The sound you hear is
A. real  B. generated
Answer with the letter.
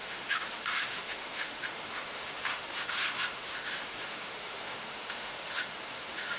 B